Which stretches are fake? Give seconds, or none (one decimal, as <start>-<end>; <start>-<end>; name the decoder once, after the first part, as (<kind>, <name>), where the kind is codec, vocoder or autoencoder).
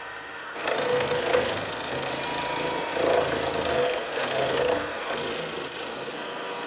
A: 0.0-2.1 (codec, SNAC); 3.7-5.2; 5.9-6.7